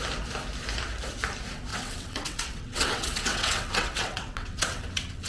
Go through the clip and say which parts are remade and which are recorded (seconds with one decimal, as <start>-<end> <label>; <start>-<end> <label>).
0.0-1.7 recorded; 1.7-5.3 remade